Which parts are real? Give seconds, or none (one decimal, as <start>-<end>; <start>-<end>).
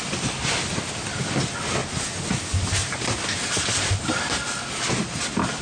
0.0-5.6